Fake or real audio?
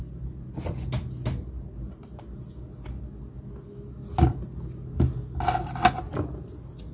real